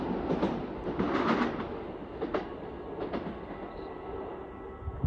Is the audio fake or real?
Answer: real